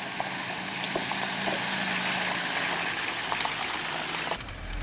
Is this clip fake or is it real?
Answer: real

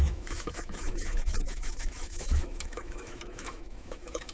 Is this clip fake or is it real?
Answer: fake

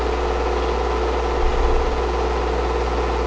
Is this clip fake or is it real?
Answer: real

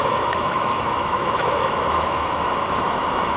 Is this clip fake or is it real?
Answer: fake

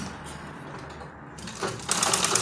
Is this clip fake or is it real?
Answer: real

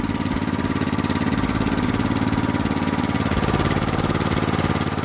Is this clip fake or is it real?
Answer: real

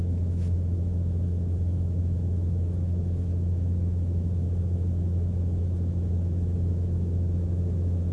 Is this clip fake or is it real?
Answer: fake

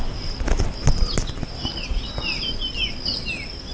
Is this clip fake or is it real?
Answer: real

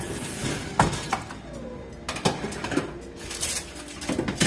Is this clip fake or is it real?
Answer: real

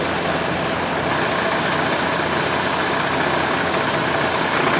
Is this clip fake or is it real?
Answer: real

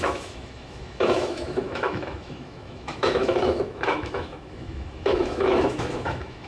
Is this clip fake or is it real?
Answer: fake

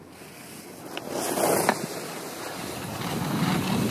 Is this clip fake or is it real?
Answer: real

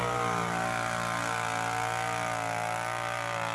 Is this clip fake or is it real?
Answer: real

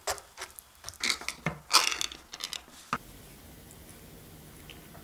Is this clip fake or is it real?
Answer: real